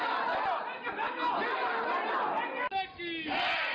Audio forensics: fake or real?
real